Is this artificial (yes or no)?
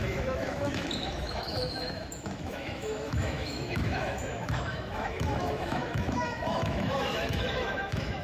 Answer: yes